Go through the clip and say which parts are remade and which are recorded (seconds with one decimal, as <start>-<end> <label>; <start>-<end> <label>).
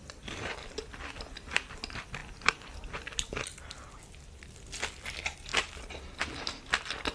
0.0-5.5 recorded; 5.5-6.2 remade; 6.2-7.1 recorded